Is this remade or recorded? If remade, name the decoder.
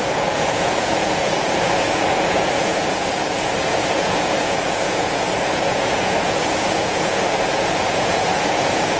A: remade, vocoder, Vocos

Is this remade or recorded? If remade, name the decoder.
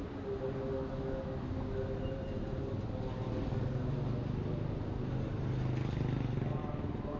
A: recorded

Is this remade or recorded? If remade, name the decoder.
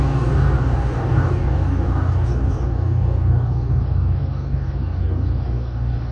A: remade, codec, DAC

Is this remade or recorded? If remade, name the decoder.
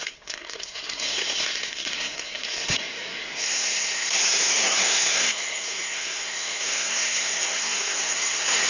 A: remade, codec, SNAC